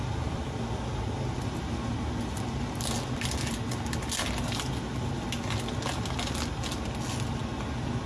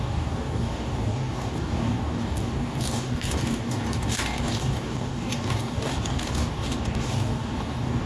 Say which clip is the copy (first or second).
second